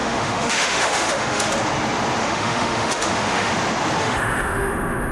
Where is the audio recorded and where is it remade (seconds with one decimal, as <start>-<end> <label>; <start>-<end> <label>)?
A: 0.0-1.5 remade; 1.5-2.2 recorded; 2.2-3.5 remade; 3.5-4.0 recorded; 4.0-5.1 remade